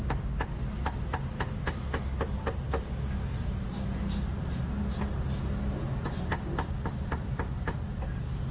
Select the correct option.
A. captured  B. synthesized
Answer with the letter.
A